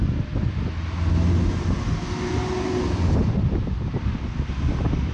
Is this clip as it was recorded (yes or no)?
yes